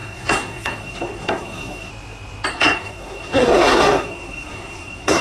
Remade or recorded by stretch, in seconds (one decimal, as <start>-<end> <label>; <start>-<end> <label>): 0.0-1.9 remade; 1.9-2.5 recorded; 2.5-5.2 remade